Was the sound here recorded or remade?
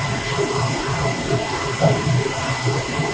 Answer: remade